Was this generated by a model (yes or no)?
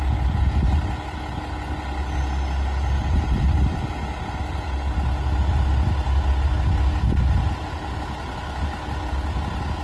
no